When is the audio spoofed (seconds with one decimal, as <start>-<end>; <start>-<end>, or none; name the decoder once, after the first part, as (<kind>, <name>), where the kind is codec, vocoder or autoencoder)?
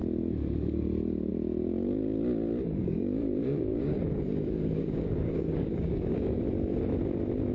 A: 2.8-6.4 (codec, DAC)